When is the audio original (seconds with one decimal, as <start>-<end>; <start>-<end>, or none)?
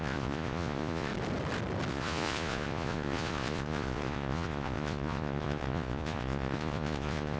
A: 1.1-1.9